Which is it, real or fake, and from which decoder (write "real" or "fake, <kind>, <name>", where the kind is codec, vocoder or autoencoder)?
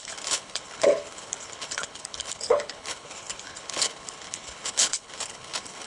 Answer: fake, codec, HILCodec